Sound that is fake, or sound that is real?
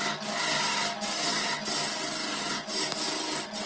real